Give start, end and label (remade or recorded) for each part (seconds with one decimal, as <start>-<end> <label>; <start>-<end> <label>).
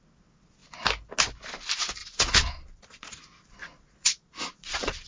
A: 0.0-2.0 recorded; 2.0-3.2 remade; 3.2-3.6 recorded; 3.6-5.1 remade